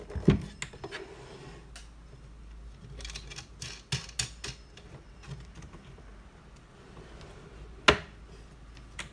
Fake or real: real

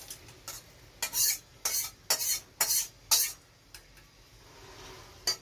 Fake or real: real